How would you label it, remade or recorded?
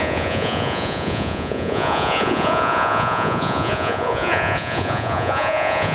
remade